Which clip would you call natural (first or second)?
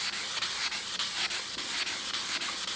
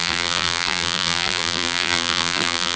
first